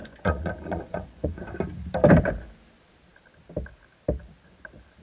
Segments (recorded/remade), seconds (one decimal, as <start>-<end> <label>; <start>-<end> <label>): 0.0-1.4 remade; 1.4-5.0 recorded